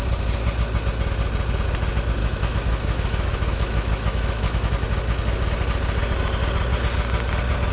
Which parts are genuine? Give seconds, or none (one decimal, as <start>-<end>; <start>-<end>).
0.0-2.2; 4.7-7.7